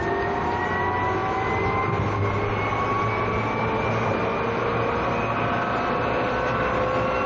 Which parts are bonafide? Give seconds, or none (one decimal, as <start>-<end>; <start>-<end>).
0.0-7.3